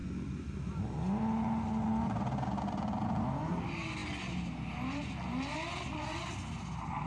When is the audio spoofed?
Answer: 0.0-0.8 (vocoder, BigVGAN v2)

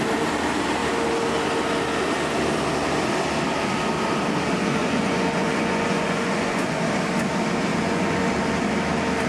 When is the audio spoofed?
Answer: 4.6-6.8 (vocoder, Vocos); 7.7-8.3

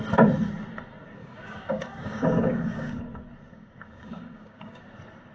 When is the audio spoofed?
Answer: 1.2-3.0 (codec, DAC); 3.5-4.8

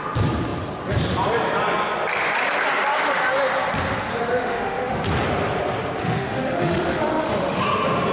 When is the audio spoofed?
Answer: 4.4-4.9 (autoencoder, DAC-VAE); 6.0-7.6

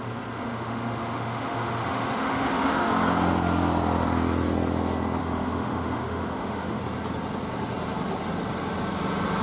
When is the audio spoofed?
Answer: 0.4-2.9 (autoencoder, DAC-VAE); 5.2-6.8